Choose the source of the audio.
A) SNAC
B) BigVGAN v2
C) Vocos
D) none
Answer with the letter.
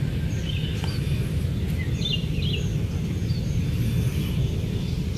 D